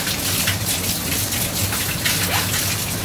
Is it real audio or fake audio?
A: real